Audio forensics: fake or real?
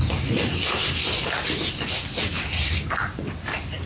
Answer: real